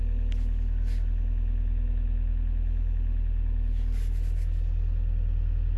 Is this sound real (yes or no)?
yes